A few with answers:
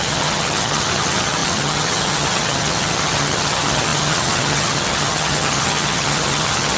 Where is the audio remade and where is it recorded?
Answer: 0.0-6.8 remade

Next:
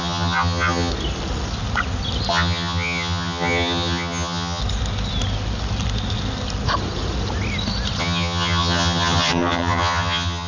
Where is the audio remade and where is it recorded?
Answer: 0.0-0.9 remade; 0.9-2.3 recorded; 2.3-4.6 remade; 4.6-8.0 recorded; 8.0-10.5 remade

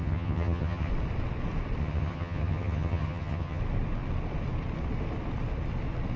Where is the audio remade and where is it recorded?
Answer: 0.0-0.9 remade; 0.9-1.8 recorded; 1.8-3.6 remade; 3.6-6.2 recorded

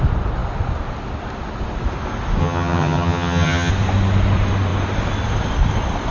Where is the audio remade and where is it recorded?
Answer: 0.0-2.4 recorded; 2.4-3.7 remade; 3.7-6.1 recorded

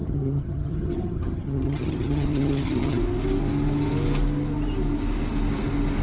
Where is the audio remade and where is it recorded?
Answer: 0.0-3.0 remade; 3.0-6.0 recorded

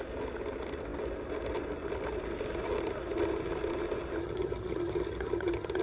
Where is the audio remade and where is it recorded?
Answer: 0.0-4.2 recorded; 4.2-5.8 remade

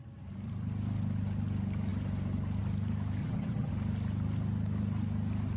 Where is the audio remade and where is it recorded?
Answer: 0.0-3.2 recorded; 3.2-3.7 remade; 3.7-5.6 recorded